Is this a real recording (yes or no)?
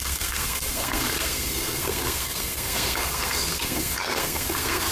no